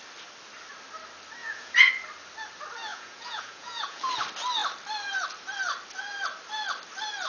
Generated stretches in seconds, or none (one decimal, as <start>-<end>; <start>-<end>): 1.4-1.9; 2.9-4.0